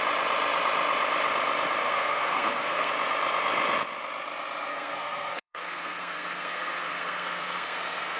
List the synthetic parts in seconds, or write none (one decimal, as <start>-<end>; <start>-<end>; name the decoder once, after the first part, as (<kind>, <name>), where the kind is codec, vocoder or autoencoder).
1.8-2.9 (codec, SNAC); 4.7-8.2